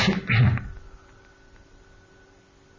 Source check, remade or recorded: recorded